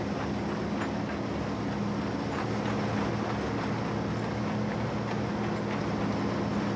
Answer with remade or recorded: recorded